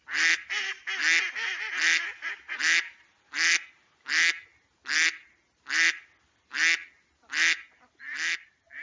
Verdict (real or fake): real